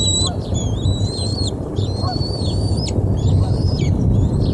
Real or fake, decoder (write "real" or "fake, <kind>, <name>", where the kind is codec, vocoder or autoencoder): fake, vocoder, BigVGAN v2